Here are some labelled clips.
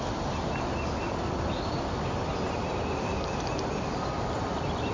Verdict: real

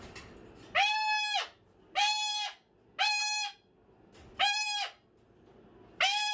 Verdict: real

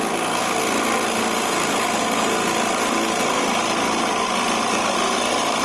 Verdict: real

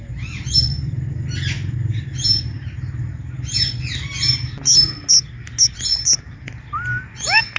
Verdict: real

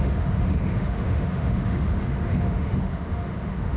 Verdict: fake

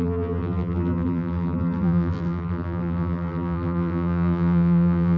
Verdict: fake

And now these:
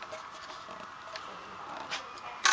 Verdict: real